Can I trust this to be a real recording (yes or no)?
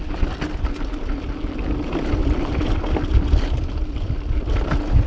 yes